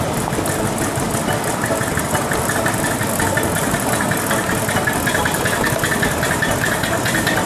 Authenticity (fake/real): fake